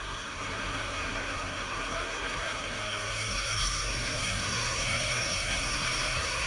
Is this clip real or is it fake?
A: fake